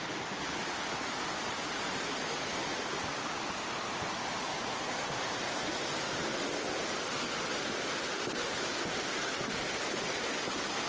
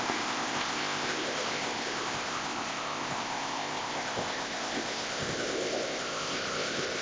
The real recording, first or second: first